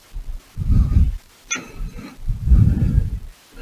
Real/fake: real